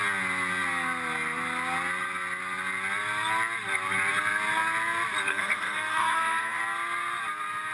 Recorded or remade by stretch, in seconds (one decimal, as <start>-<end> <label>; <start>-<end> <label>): 0.0-5.3 recorded; 5.3-6.6 remade; 6.6-7.7 recorded